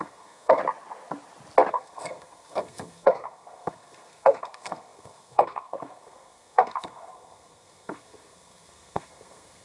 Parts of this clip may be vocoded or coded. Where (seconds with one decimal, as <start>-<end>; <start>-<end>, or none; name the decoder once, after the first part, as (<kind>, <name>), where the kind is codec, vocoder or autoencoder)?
0.0-0.6 (codec, SNAC); 1.7-9.6